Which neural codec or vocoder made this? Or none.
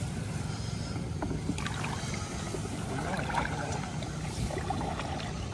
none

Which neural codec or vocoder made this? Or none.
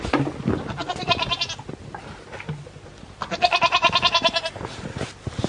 none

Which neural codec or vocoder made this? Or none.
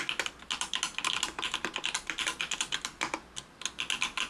none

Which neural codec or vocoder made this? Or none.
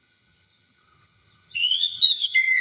vocoder, HiFi-GAN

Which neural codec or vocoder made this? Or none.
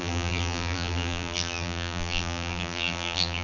vocoder, BigVGAN v2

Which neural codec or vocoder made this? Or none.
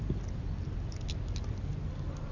none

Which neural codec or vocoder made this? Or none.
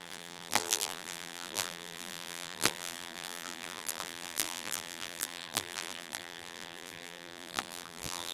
vocoder, BigVGAN v2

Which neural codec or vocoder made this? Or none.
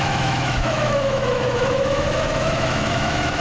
autoencoder, DAC-VAE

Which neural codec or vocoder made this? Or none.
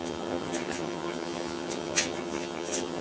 vocoder, HiFi-GAN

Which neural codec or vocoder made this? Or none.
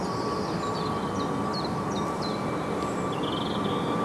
none